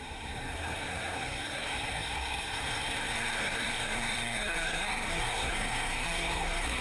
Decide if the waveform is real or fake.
fake